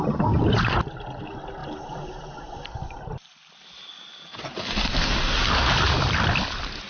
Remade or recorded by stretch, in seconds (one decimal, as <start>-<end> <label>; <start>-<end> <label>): 0.0-6.9 recorded